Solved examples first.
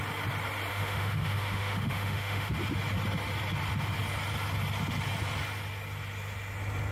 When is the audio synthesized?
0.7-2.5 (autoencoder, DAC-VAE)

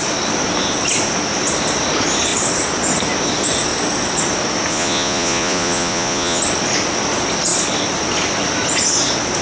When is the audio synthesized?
4.7-6.4 (vocoder, Vocos)

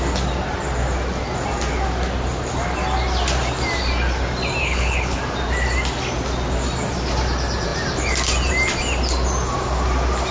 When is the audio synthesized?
4.6-5.2 (codec, HILCodec)

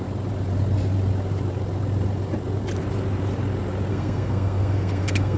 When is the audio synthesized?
3.9-5.4 (codec, SNAC)

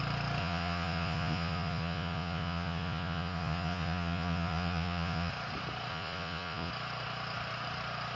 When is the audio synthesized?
0.4-5.3 (vocoder, Vocos); 5.9-6.7

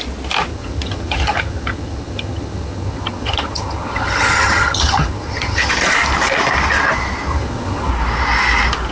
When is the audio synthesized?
0.5-5.7 (vocoder, HiFi-GAN); 7.3-7.9

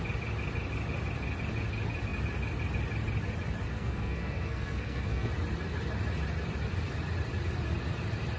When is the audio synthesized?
3.7-5.3 (codec, SNAC)

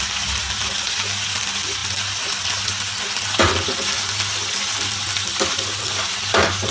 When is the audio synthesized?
none